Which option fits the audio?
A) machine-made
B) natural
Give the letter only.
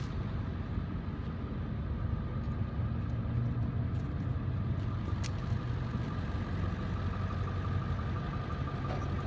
B